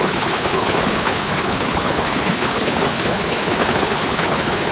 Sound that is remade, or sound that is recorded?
remade